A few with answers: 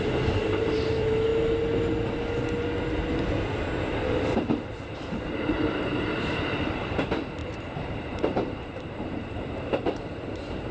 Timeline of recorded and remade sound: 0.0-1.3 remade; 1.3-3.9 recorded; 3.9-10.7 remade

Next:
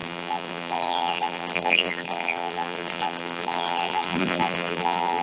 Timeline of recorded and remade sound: 0.0-5.2 remade

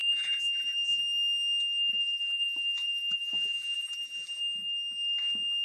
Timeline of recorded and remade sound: 0.0-1.0 remade; 1.0-1.9 recorded; 1.9-4.4 remade; 4.4-5.6 recorded

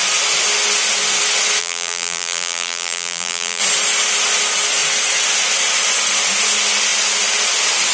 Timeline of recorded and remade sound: 0.0-1.6 recorded; 1.6-3.6 remade; 3.6-7.9 recorded